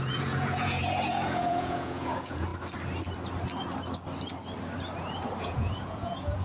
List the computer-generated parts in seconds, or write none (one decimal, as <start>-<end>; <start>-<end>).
0.0-2.5; 5.4-6.4